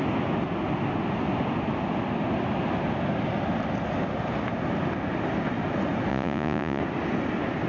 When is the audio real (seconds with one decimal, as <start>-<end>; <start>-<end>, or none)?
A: 0.0-6.1; 6.8-7.7